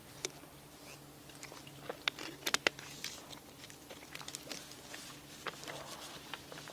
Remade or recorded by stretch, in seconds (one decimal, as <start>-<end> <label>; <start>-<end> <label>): 0.0-6.7 recorded